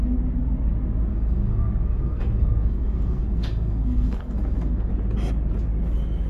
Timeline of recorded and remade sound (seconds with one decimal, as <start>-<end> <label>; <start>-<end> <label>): 0.0-1.1 recorded; 1.1-4.9 remade; 4.9-6.3 recorded